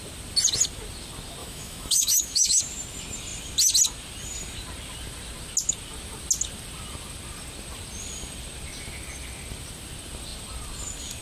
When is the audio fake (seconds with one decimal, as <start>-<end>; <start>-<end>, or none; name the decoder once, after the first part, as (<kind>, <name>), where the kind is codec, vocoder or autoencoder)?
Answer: 1.4-2.6 (autoencoder, DAC-VAE)